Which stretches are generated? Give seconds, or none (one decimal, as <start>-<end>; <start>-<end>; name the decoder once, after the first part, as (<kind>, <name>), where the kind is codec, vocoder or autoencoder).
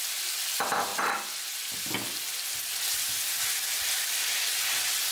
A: none